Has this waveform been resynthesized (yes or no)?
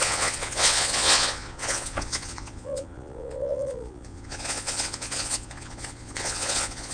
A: yes